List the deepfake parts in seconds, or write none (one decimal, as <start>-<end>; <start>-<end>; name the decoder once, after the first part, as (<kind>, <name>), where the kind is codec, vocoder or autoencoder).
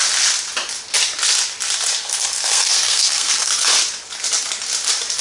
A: 2.0-3.5 (codec, SNAC)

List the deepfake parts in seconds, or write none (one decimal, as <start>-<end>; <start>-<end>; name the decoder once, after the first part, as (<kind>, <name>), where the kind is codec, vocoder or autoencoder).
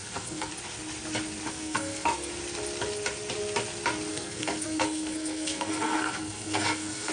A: 0.0-0.5 (codec, SNAC); 1.5-2.3; 4.1-7.1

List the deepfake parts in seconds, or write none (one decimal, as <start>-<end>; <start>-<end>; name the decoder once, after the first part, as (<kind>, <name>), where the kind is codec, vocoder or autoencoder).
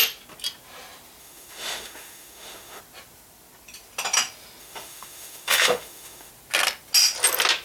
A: 1.2-2.8 (autoencoder, DAC-VAE); 4.6-6.3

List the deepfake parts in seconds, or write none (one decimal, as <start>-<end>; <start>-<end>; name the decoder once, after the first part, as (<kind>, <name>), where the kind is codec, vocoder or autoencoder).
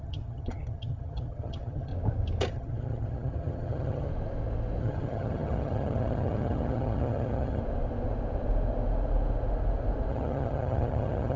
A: 0.0-1.9 (vocoder, HiFi-GAN); 2.5-4.1; 4.8-7.6; 10.1-11.4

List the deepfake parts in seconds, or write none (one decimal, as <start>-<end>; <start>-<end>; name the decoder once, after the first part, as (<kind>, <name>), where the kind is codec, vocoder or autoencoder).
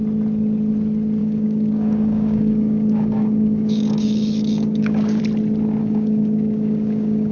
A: 1.2-5.2 (codec, DAC); 5.8-7.3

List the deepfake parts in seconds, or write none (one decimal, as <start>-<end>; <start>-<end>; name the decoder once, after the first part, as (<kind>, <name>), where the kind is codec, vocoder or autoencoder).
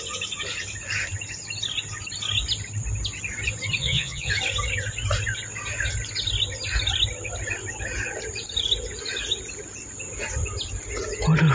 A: 3.8-4.3 (vocoder, Vocos)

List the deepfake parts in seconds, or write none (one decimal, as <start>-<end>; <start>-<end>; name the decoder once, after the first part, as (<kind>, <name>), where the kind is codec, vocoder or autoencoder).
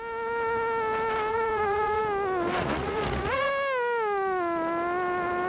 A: 1.3-2.0 (vocoder, Vocos); 2.6-3.5